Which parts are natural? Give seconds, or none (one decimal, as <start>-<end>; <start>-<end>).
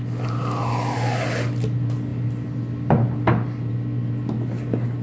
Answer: 0.0-5.0